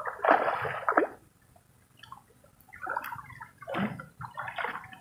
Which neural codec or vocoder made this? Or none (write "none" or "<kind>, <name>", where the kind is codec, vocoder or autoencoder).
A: none